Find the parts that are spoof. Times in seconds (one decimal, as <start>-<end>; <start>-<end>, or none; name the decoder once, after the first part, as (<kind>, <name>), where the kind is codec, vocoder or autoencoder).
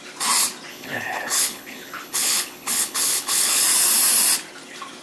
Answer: 0.7-3.6 (codec, HILCodec)